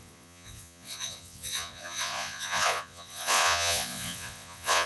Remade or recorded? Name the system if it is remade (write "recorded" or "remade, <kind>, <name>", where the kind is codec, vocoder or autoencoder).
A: remade, vocoder, Vocos